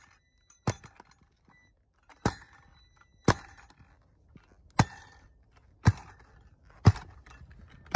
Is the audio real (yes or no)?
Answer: yes